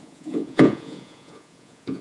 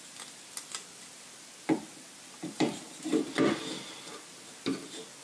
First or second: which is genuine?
second